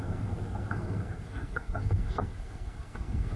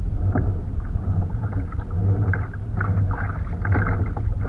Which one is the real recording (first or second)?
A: second